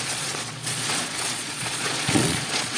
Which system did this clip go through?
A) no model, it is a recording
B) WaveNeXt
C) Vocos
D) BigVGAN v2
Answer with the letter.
C